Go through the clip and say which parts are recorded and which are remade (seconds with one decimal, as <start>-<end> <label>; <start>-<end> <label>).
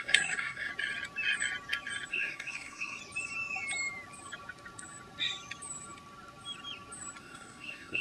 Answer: 0.0-0.7 remade; 0.7-2.1 recorded; 2.1-3.0 remade; 3.0-7.2 recorded; 7.2-8.0 remade